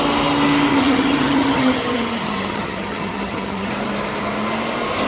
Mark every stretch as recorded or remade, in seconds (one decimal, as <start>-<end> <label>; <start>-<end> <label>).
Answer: 0.0-0.7 recorded; 0.7-3.7 remade; 3.7-5.1 recorded